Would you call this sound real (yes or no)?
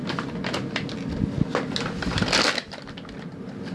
yes